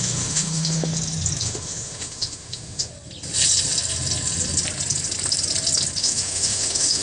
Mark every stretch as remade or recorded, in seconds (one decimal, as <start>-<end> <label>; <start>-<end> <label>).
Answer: 0.0-0.9 remade; 0.9-1.4 recorded; 1.4-2.9 remade; 2.9-6.0 recorded; 6.0-7.0 remade